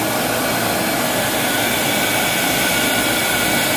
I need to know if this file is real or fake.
real